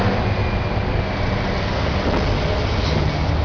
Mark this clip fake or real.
real